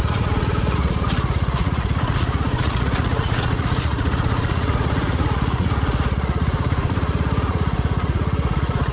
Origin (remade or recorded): remade